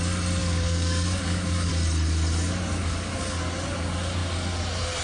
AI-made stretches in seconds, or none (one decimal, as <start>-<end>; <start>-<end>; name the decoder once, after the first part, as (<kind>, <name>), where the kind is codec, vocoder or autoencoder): 0.4-1.7 (codec, DAC); 2.8-3.4